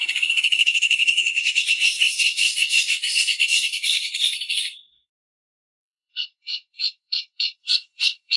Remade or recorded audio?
remade